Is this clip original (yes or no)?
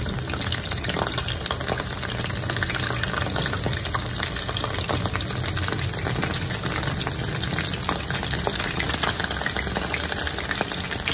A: yes